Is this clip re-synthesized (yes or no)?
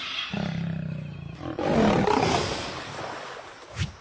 no